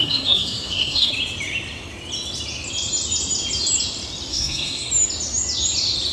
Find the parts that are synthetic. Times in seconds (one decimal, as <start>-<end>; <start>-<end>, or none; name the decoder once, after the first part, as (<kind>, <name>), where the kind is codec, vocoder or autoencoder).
0.0-1.1 (codec, SNAC); 4.3-4.9